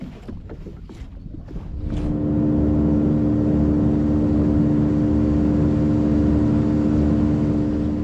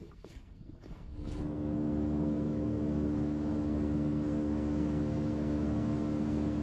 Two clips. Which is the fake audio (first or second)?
second